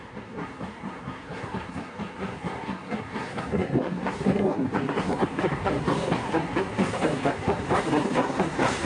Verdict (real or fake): fake